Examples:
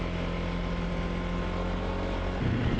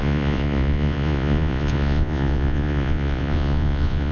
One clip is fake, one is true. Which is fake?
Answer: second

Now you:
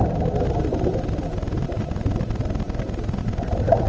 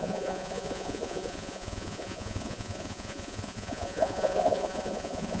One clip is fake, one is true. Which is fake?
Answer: second